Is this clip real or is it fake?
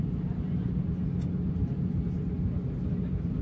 real